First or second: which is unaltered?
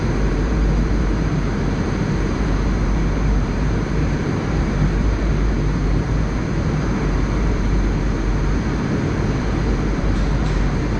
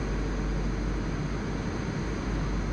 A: second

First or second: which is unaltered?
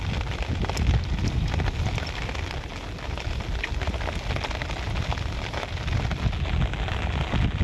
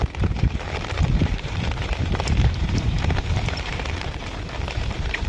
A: first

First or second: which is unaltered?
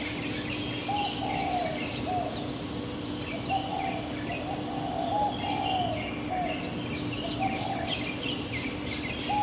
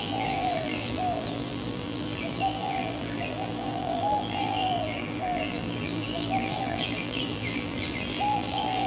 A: first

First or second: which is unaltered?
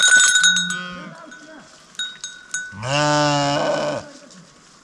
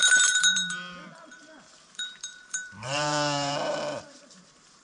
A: first